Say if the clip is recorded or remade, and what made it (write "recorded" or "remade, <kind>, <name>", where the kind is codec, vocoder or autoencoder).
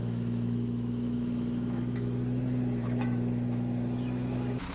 remade, autoencoder, DAC-VAE